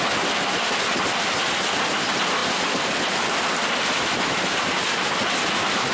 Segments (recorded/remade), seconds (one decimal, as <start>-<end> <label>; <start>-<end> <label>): 0.0-5.9 recorded